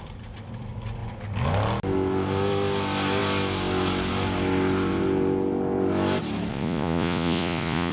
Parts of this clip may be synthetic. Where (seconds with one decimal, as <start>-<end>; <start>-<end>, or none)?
6.5-7.9